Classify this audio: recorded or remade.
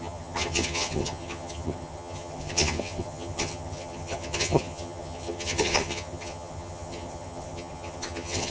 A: remade